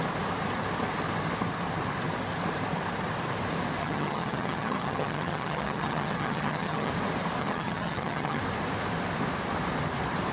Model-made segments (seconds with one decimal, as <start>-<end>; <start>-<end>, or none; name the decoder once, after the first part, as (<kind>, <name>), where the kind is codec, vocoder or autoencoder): 3.8-6.9 (vocoder, HiFi-GAN); 7.4-8.4